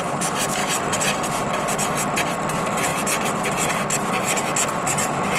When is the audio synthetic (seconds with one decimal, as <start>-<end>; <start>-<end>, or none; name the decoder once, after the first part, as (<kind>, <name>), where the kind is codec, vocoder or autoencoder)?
0.0-2.9 (vocoder, BigVGAN v2); 4.2-5.4

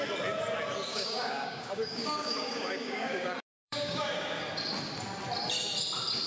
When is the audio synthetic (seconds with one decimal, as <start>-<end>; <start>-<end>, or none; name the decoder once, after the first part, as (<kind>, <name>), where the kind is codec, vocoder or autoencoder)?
0.9-4.4 (codec, DAC)

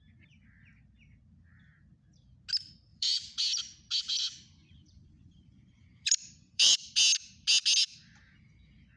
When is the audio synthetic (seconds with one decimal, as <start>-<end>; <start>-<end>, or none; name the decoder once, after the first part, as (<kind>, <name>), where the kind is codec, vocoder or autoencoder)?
2.9-3.4 (vocoder, BigVGAN v2); 4.6-7.0

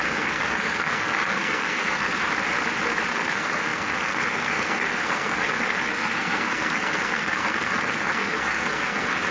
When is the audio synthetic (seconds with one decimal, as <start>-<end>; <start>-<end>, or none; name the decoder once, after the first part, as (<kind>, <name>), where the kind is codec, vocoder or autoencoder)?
0.0-2.2 (codec, SNAC); 3.1-9.3

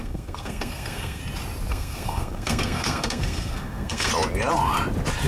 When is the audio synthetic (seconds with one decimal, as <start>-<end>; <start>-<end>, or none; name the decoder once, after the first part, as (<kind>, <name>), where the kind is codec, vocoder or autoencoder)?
0.0-1.2 (codec, SNAC); 1.7-4.1

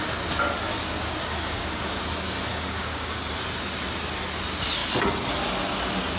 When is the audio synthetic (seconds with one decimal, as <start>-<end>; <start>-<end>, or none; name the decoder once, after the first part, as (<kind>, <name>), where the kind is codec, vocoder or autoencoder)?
0.7-1.9 (codec, DAC); 2.5-3.3

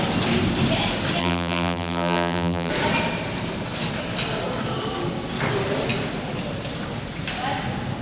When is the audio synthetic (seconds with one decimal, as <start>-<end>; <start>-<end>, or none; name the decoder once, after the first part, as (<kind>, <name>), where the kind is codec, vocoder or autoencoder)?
1.2-2.7 (vocoder, BigVGAN v2)

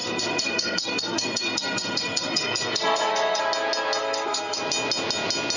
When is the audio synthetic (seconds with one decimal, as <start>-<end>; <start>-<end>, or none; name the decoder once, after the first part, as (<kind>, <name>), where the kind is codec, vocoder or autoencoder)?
0.0-3.4 (codec, SNAC); 4.0-4.6